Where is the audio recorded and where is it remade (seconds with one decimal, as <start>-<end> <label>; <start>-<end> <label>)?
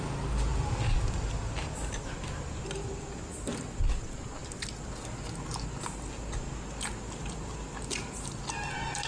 0.0-9.1 recorded